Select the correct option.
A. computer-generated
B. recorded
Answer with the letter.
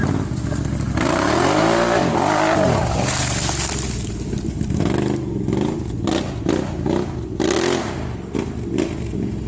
B